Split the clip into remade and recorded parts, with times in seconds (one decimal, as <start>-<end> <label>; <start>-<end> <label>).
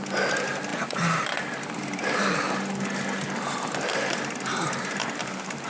0.0-0.7 recorded; 0.7-2.3 remade; 2.3-4.0 recorded; 4.0-5.7 remade